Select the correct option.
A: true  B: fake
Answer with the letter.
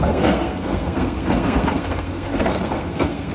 B